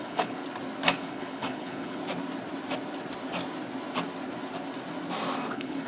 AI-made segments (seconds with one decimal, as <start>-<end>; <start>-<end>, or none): 0.0-0.4; 1.0-2.0; 5.5-5.9